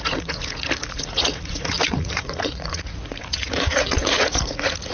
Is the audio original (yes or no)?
no